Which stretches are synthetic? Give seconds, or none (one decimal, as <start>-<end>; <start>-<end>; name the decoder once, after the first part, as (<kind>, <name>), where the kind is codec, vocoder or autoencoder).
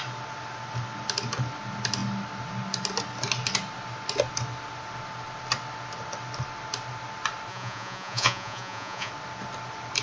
7.5-9.1 (vocoder, Vocos)